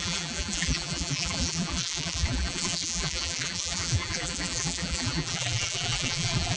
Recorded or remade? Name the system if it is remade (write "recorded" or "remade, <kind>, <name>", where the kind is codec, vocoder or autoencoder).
remade, vocoder, BigVGAN v2